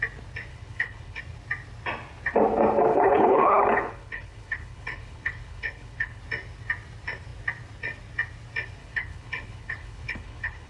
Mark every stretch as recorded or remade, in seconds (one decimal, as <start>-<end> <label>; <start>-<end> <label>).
0.0-0.5 recorded; 0.5-1.2 remade; 1.2-2.9 recorded; 2.9-6.2 remade; 6.2-8.8 recorded; 8.8-10.7 remade